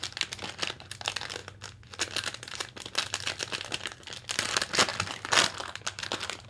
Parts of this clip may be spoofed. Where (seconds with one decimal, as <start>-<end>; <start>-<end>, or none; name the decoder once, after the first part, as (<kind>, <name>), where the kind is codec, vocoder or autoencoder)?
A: none